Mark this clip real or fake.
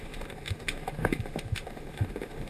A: fake